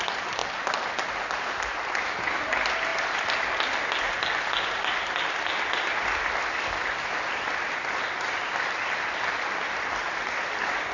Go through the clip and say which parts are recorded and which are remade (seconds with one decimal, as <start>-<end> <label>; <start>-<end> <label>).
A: 0.0-10.9 recorded